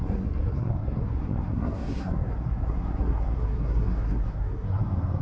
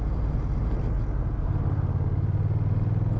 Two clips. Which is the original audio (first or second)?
second